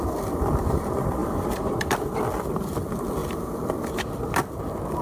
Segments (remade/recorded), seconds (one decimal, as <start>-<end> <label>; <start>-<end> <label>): 0.0-5.0 recorded